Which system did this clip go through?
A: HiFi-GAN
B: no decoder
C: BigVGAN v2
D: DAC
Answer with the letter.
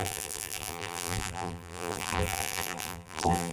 C